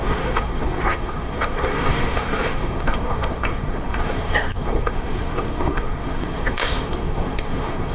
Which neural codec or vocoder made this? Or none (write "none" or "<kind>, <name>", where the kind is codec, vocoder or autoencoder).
codec, SNAC